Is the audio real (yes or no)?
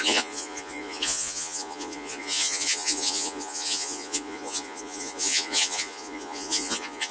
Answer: no